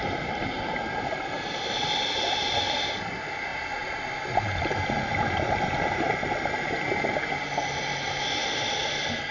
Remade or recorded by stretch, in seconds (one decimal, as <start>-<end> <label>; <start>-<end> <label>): 0.0-9.3 recorded